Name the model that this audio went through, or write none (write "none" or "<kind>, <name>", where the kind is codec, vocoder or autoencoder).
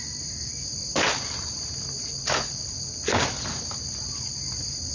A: none